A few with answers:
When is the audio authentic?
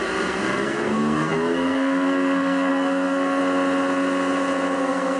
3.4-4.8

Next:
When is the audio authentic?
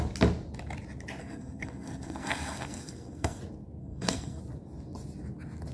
0.0-1.2; 3.4-3.8; 4.4-5.7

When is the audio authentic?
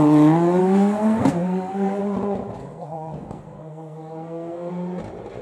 0.0-0.6; 2.0-2.6; 4.7-5.4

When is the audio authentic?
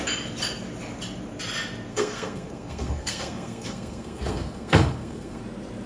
0.0-1.9; 5.4-5.9